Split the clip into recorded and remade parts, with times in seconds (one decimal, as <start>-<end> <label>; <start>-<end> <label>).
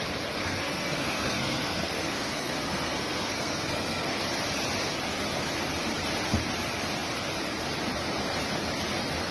0.0-0.4 recorded; 0.4-4.2 remade; 4.2-9.3 recorded